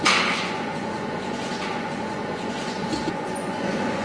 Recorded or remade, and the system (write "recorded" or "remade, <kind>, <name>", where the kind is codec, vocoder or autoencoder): remade, vocoder, Vocos